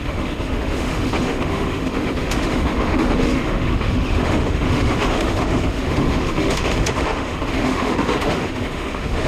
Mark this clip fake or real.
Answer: fake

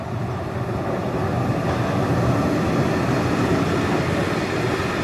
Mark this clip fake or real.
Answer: real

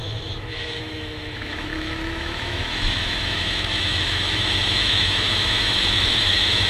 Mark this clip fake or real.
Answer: fake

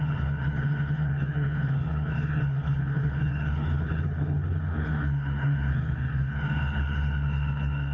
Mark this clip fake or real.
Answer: fake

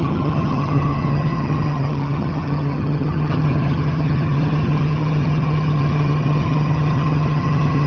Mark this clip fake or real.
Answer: fake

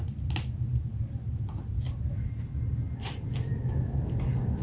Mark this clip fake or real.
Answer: real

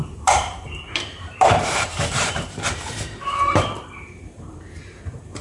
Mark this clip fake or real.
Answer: fake